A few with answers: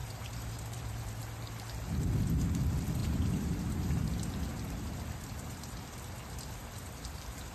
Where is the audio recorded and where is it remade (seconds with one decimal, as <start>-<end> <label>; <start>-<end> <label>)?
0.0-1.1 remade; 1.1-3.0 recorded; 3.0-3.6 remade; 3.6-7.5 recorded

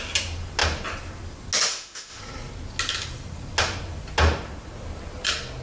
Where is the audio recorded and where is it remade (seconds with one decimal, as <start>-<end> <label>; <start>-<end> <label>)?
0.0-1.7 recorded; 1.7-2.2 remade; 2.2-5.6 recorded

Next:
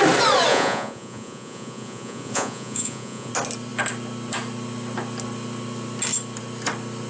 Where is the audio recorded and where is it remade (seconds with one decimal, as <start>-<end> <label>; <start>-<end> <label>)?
0.0-0.5 recorded; 0.5-3.3 remade; 3.3-7.1 recorded